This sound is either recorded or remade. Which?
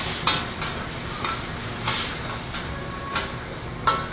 recorded